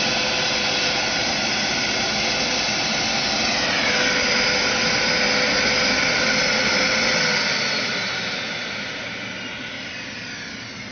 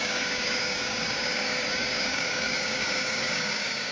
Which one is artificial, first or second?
second